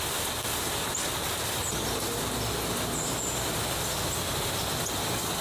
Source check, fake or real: real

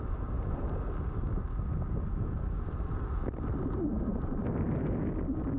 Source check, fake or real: real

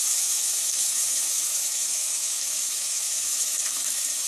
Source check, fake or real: fake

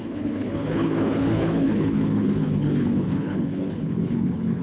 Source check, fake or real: fake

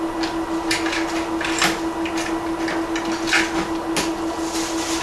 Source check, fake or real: real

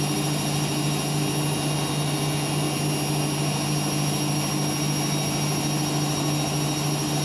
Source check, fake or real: real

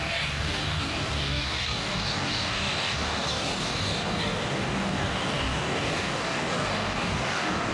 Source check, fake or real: fake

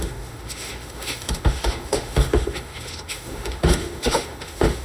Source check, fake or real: fake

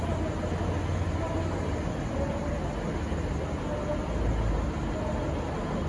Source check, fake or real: real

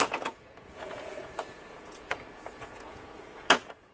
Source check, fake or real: fake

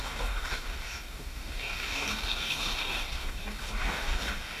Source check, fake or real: fake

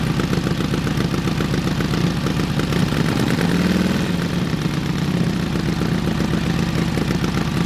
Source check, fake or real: real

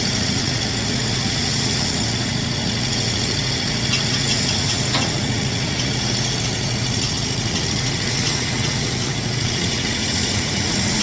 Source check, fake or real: fake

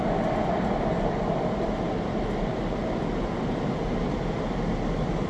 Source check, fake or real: real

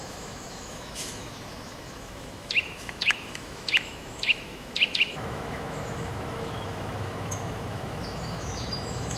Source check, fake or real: fake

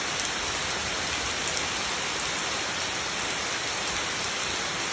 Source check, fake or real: real